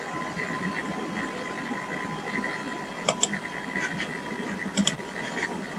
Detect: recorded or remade recorded